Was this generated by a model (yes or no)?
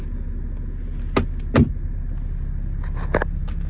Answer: no